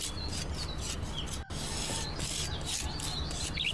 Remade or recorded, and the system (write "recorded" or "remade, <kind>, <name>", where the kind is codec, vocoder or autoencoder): recorded